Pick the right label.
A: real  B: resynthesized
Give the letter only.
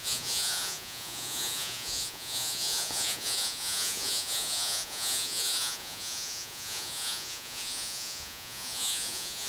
B